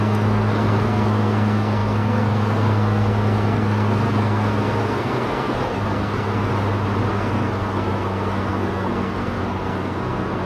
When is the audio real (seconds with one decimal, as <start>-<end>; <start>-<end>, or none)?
6.5-7.1